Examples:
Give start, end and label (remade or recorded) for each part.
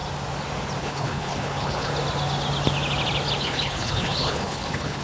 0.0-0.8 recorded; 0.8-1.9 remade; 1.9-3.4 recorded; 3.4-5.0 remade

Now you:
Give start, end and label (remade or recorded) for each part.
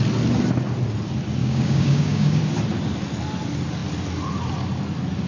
0.0-1.4 recorded; 1.4-2.4 remade; 2.4-5.3 recorded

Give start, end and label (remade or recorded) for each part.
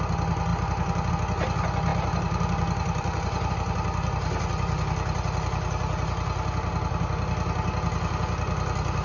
0.0-0.5 recorded; 0.5-1.1 remade; 1.1-1.9 recorded; 1.9-3.5 remade; 3.5-9.0 recorded